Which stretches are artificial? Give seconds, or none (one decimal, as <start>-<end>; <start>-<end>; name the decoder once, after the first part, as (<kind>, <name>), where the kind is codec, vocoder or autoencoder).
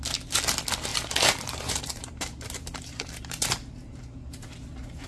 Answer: 0.9-4.0 (vocoder, BigVGAN v2)